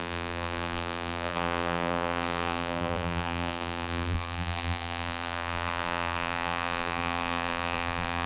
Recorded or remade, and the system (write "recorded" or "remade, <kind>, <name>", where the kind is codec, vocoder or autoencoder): remade, vocoder, BigVGAN v2